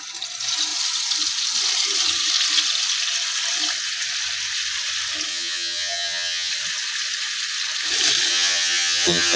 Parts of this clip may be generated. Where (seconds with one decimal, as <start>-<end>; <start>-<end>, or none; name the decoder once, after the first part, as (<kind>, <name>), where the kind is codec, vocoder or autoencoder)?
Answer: 5.3-6.5 (vocoder, HiFi-GAN); 8.3-9.4